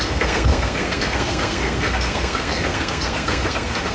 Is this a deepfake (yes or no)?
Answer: yes